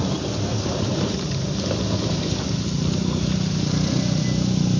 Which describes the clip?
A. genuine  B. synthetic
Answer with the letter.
A